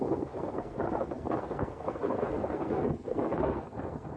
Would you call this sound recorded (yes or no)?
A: no